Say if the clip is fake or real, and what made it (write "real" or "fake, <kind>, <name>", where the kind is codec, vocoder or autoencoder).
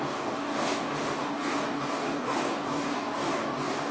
fake, codec, DAC